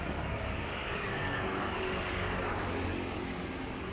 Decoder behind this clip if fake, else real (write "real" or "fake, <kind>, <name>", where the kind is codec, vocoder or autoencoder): fake, codec, DAC